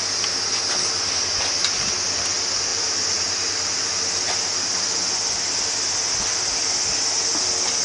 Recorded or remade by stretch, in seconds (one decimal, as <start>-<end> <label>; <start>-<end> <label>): 0.0-2.7 recorded; 2.7-3.7 remade; 3.7-7.8 recorded